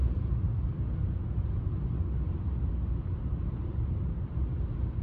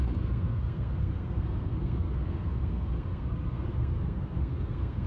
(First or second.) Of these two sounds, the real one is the first